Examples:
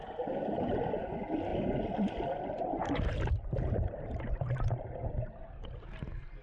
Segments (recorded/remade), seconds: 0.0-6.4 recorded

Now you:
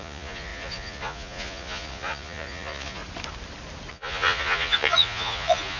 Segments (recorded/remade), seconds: 0.0-3.0 remade; 3.0-3.9 recorded; 3.9-5.8 remade

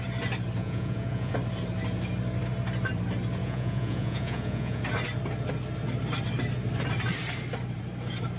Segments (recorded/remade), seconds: 0.0-0.6 recorded; 0.6-1.3 remade; 1.3-3.4 recorded; 3.4-4.8 remade; 4.8-8.4 recorded

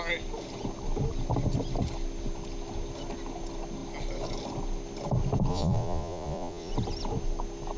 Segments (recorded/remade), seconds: 0.0-5.5 recorded; 5.5-6.7 remade; 6.7-7.8 recorded